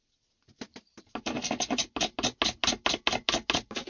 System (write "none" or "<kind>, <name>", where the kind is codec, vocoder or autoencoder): none